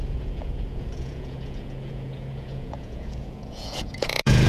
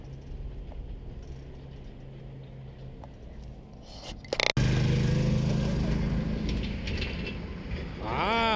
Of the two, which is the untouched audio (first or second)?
second